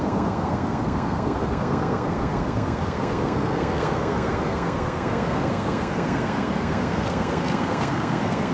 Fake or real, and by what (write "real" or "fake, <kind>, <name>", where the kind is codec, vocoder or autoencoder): fake, codec, SNAC